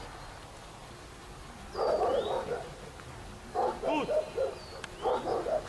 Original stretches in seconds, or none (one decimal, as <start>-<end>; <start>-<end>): 0.0-5.7